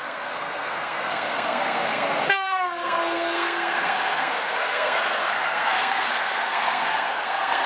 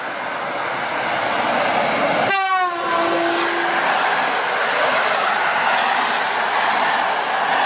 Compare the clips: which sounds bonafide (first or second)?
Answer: second